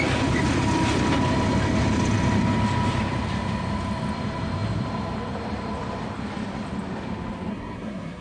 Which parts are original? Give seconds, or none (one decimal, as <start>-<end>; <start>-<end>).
0.0-7.5